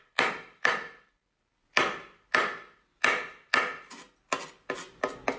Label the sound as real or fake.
real